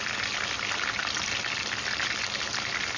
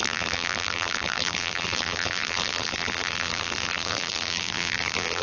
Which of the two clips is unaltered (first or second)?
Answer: first